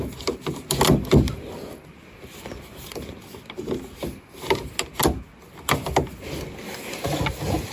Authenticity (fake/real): real